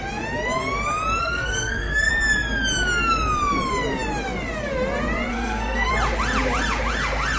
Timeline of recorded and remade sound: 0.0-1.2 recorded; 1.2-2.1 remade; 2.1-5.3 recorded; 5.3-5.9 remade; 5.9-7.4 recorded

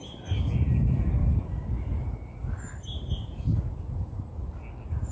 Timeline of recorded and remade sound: 0.0-5.1 recorded

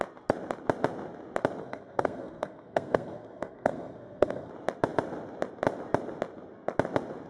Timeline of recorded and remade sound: 0.0-1.6 recorded; 1.6-4.5 remade; 4.5-7.3 recorded

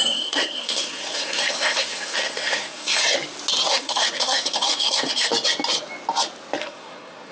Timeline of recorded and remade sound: 0.0-3.0 remade; 3.0-3.7 recorded; 3.7-5.3 remade; 5.3-6.6 recorded; 6.6-7.3 remade

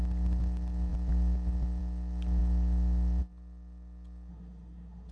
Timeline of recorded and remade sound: 0.0-4.3 recorded; 4.3-5.1 remade

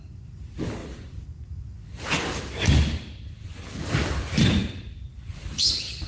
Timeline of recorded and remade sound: 0.0-6.1 recorded

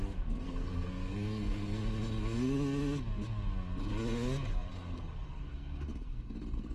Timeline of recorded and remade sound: 0.0-1.8 remade; 1.8-4.7 recorded; 4.7-6.7 remade

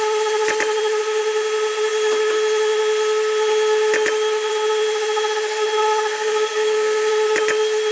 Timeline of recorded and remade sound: 0.0-6.1 recorded; 6.1-7.1 remade; 7.1-7.9 recorded